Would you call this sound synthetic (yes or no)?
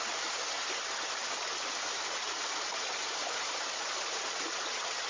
no